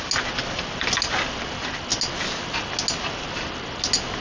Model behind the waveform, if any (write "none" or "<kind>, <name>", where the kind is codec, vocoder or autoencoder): none